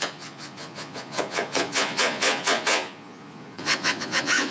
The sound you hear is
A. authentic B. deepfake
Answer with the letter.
B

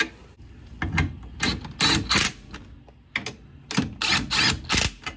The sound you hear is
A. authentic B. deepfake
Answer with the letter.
A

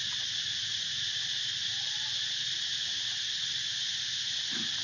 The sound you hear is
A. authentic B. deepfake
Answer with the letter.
B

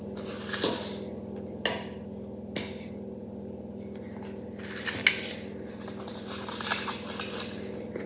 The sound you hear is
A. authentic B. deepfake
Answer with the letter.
A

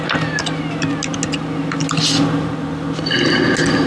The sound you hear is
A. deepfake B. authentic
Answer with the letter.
B